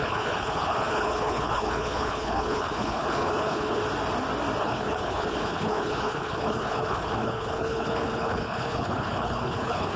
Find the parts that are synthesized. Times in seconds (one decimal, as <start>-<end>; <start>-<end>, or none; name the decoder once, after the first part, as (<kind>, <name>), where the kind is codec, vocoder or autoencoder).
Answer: 0.0-3.8 (codec, HILCodec); 4.6-10.0